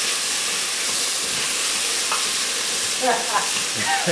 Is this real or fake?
real